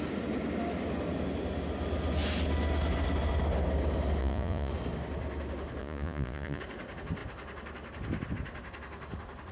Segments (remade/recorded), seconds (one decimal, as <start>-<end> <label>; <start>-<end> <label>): 0.0-4.2 recorded; 4.2-4.7 remade; 4.7-5.8 recorded; 5.8-6.6 remade; 6.6-9.5 recorded